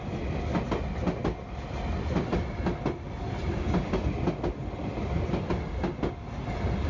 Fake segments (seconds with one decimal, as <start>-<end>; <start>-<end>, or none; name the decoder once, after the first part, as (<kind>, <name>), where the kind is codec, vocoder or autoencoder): none